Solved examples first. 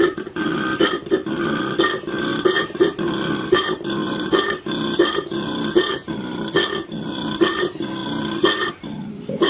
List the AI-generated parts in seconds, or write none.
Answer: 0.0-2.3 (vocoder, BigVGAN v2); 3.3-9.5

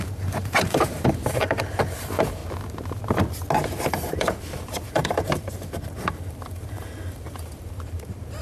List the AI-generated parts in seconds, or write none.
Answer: 0.0-2.4 (vocoder, BigVGAN v2); 3.9-8.4

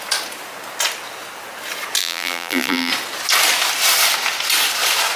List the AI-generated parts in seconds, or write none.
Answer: 2.0-2.9 (vocoder, BigVGAN v2)